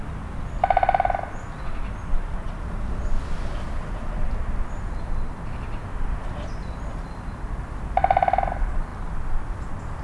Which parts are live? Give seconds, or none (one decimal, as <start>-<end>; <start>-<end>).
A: 0.0-10.0